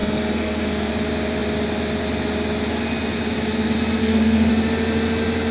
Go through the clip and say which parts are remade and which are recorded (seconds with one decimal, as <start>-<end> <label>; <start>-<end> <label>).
0.0-0.9 remade; 0.9-4.0 recorded; 4.0-4.5 remade; 4.5-5.5 recorded